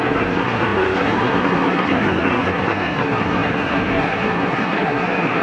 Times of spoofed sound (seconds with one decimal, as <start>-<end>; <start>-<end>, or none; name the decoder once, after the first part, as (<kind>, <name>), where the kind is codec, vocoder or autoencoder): 0.0-5.4 (codec, SNAC)